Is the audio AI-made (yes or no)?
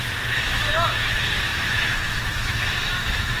yes